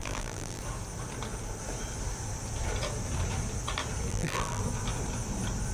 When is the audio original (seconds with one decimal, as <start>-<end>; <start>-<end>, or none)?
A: 0.6-4.1; 4.6-5.7